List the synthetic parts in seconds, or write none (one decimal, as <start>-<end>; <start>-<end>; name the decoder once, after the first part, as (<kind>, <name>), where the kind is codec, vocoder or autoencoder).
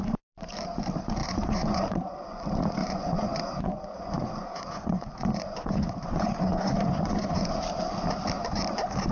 1.2-2.4 (vocoder, Vocos); 2.8-7.5